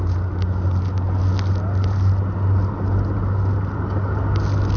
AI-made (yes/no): no